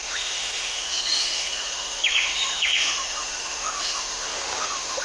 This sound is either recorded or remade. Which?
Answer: remade